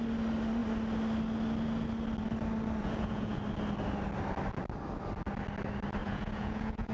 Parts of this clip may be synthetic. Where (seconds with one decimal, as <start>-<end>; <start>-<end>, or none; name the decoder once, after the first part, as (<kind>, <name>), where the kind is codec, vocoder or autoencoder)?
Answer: 2.8-3.4 (vocoder, Vocos); 6.0-6.9